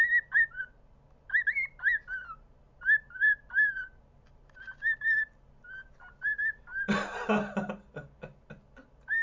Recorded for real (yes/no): yes